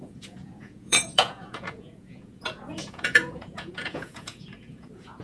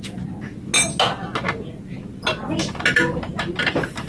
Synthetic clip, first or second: first